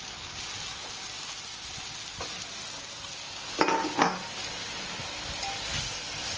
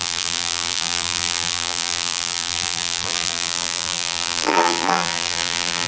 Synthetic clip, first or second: second